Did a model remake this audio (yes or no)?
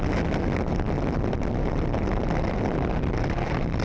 no